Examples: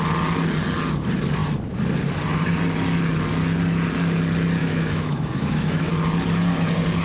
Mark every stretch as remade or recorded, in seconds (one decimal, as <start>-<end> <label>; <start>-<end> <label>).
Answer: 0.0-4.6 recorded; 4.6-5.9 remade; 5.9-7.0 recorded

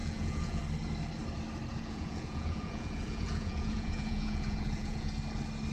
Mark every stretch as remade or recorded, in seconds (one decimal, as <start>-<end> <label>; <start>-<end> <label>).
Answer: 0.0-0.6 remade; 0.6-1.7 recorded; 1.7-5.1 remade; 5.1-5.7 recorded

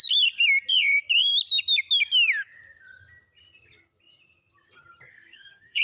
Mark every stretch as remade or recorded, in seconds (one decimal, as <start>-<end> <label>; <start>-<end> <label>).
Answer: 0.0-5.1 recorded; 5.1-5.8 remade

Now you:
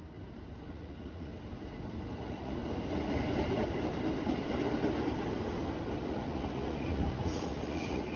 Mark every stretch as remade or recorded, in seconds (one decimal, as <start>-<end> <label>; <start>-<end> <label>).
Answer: 0.0-0.7 recorded; 0.7-1.3 remade; 1.3-2.2 recorded; 2.2-2.6 remade; 2.6-6.0 recorded; 6.0-8.2 remade

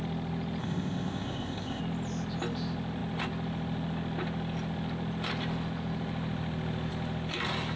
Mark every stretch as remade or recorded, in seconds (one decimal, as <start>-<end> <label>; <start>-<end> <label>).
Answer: 0.0-0.6 recorded; 0.6-1.8 remade; 1.8-7.8 recorded

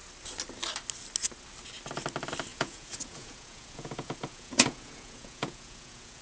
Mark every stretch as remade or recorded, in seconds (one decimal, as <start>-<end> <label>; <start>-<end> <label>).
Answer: 0.0-2.5 recorded; 2.5-6.2 remade